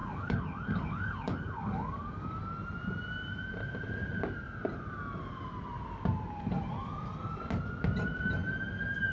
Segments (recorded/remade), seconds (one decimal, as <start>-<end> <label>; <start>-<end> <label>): 0.0-2.4 remade; 2.4-9.1 recorded